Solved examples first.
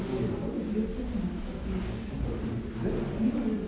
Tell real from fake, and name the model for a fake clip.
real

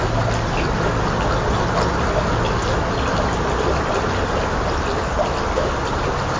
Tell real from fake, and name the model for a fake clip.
real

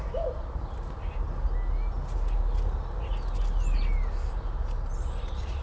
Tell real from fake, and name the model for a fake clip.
real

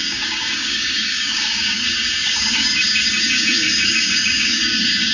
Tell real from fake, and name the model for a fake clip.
fake, codec, DAC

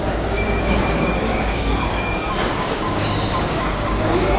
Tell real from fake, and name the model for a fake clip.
fake, codec, DAC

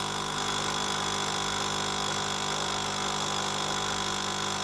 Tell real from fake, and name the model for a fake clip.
real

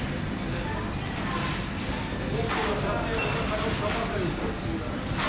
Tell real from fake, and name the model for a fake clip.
real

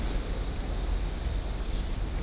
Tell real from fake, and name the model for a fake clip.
real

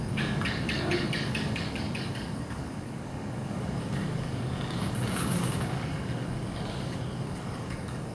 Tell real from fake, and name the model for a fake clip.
fake, codec, DAC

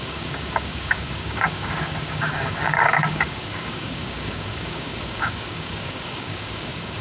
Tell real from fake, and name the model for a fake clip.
fake, codec, DAC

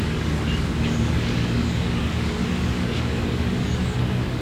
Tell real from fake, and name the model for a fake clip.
fake, codec, DAC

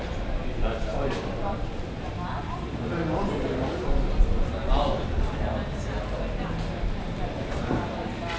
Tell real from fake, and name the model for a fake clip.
real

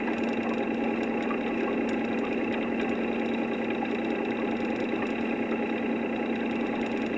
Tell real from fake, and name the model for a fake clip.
real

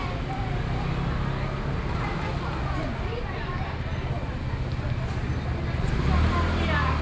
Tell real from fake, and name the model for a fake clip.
real